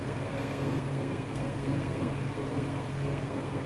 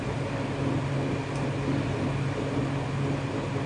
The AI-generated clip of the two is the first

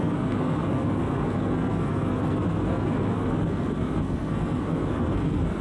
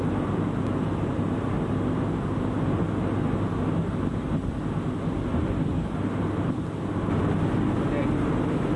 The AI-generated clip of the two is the first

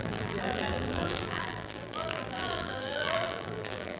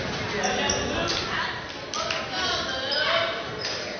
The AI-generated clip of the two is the first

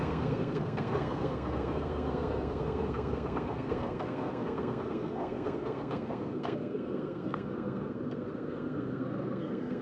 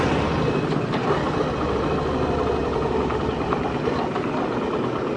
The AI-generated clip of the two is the first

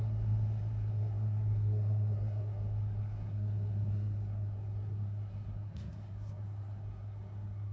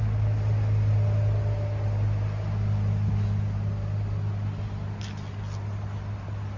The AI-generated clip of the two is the first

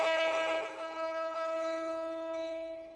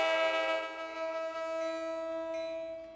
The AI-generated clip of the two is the first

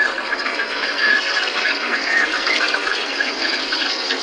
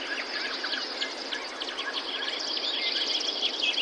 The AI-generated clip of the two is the first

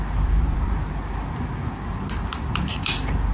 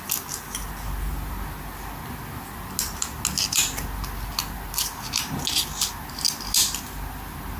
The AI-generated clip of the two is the first